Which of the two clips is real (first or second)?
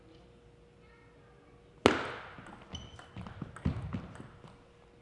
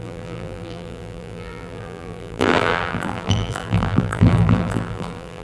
first